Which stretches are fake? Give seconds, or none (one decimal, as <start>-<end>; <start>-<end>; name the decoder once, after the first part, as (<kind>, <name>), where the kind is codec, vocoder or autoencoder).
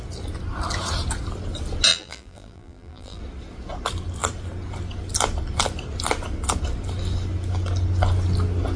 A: 1.9-3.2 (vocoder, BigVGAN v2)